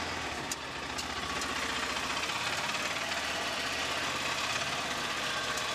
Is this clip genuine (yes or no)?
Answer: yes